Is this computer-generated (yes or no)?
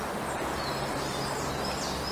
no